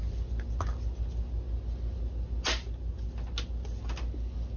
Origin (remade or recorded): recorded